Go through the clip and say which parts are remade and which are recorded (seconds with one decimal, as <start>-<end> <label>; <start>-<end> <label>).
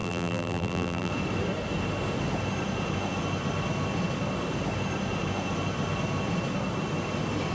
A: 0.0-1.1 remade; 1.1-7.5 recorded